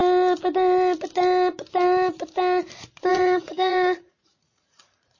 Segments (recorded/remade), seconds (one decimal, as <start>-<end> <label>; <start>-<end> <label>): 0.0-3.1 recorded; 3.1-5.2 remade

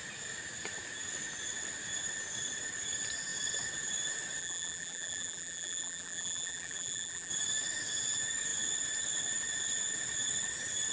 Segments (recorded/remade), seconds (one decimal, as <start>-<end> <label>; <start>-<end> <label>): 0.0-4.4 recorded; 4.4-7.3 remade; 7.3-10.9 recorded

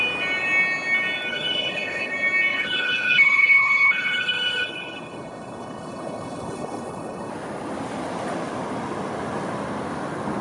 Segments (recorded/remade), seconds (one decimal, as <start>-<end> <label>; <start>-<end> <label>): 0.0-1.3 recorded; 1.3-2.1 remade; 2.1-2.5 recorded; 2.5-7.3 remade; 7.3-10.4 recorded

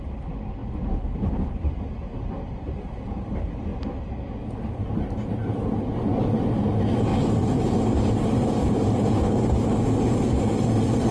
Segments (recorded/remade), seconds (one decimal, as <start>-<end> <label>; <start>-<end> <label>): 0.0-0.6 recorded; 0.6-1.8 remade; 1.8-7.1 recorded; 7.1-9.1 remade; 9.1-11.1 recorded

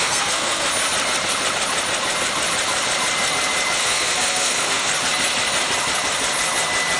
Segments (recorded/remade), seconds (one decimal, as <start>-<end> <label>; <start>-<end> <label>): 0.0-0.7 remade; 0.7-3.8 recorded; 3.8-4.9 remade; 4.9-7.0 recorded

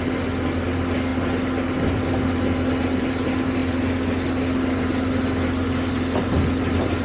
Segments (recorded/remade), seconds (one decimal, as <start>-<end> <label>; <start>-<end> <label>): 0.0-7.0 recorded